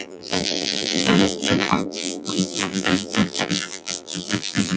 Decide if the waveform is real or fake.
fake